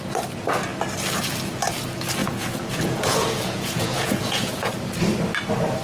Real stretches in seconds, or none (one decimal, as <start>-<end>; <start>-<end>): 0.0-2.2; 4.7-5.8